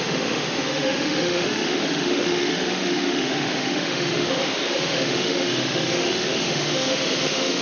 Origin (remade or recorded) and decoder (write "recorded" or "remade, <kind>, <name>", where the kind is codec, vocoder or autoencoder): remade, autoencoder, DAC-VAE